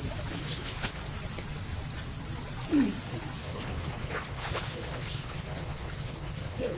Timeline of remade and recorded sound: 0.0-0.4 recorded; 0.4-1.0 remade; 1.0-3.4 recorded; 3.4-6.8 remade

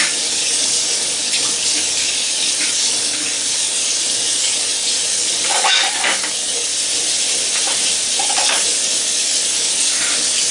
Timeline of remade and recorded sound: 0.0-6.7 remade; 6.7-8.3 recorded; 8.3-10.5 remade

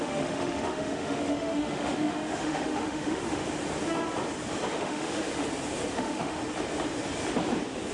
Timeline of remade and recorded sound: 0.0-3.4 remade; 3.4-4.8 recorded; 4.8-5.3 remade; 5.3-5.9 recorded; 5.9-6.4 remade; 6.4-7.9 recorded

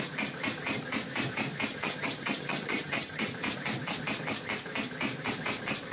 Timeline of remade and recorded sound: 0.0-1.7 recorded; 1.7-3.3 remade; 3.3-5.9 recorded

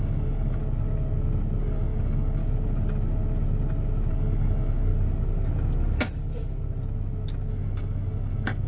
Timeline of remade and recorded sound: 0.0-0.6 remade; 0.6-1.6 recorded; 1.6-2.4 remade; 2.4-4.1 recorded; 4.1-4.9 remade; 4.9-7.5 recorded; 7.5-8.7 remade

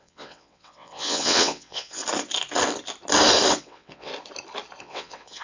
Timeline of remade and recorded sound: 0.0-2.0 remade; 2.0-3.6 recorded; 3.6-4.1 remade; 4.1-4.8 recorded; 4.8-5.4 remade

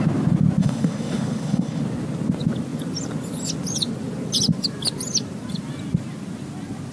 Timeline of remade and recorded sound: 0.0-0.6 recorded; 0.6-1.8 remade; 1.8-6.9 recorded

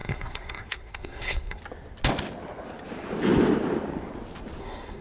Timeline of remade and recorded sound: 0.0-1.6 remade; 1.6-4.6 recorded; 4.6-5.0 remade